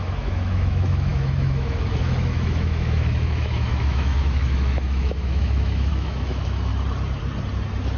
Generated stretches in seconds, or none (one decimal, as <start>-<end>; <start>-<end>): 0.0-6.7

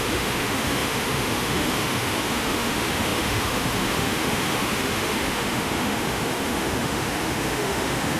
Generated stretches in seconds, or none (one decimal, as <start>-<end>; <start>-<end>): 0.0-8.2

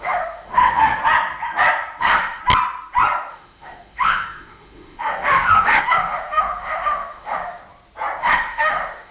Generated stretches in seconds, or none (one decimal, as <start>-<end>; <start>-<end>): 0.0-1.0; 2.0-2.4; 3.3-7.6; 8.2-9.1